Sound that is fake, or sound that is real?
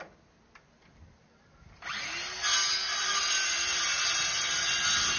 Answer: real